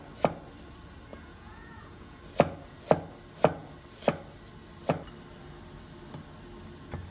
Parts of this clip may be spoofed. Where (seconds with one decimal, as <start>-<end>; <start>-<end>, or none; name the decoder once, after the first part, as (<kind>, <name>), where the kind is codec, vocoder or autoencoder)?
1.1-2.2 (vocoder, Vocos)